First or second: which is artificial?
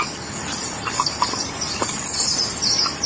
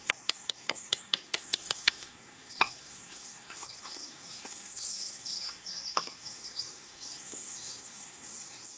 second